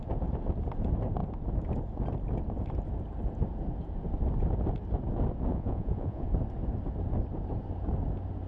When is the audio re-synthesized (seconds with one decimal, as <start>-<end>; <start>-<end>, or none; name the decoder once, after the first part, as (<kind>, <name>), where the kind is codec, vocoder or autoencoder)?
5.5-6.3 (vocoder, Vocos)